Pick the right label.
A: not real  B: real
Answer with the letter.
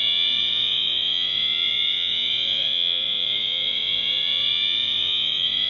A